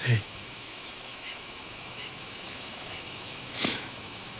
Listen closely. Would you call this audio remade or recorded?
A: remade